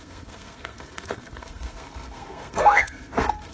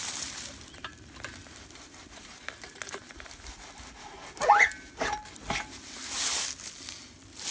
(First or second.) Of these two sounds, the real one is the second